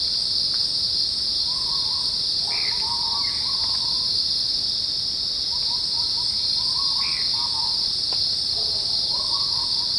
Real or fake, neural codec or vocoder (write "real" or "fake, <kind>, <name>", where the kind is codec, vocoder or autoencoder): real